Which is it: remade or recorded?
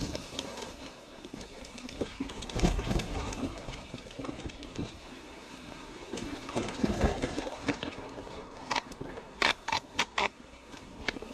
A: remade